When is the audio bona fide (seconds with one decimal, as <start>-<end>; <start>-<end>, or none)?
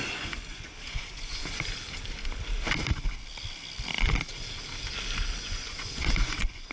1.4-5.4